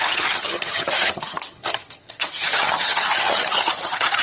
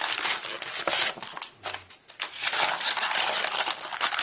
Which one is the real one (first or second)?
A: second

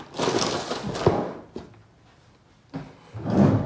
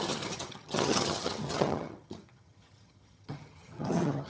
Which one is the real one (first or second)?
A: first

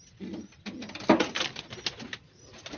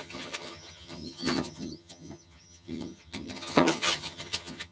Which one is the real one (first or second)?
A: first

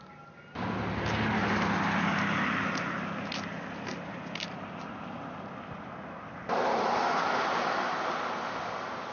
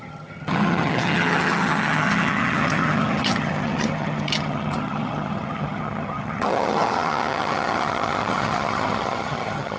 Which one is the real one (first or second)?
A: first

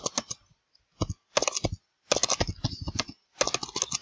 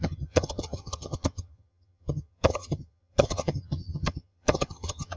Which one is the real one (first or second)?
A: first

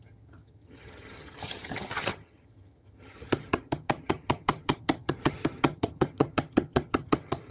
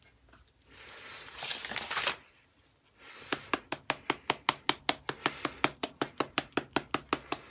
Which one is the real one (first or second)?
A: second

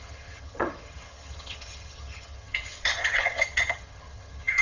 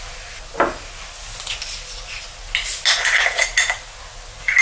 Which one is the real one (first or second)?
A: second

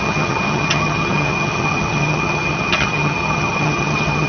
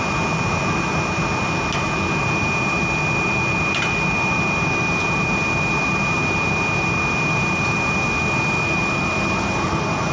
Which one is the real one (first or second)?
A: second